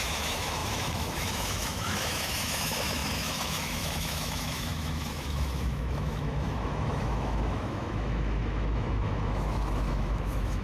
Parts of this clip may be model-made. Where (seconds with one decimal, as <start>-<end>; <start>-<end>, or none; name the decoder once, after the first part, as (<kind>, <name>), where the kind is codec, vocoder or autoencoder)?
0.0-10.6 (autoencoder, DAC-VAE)